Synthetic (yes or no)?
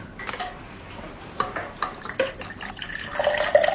yes